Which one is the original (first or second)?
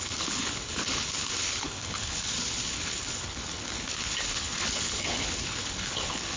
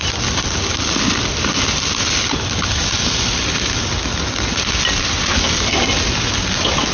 second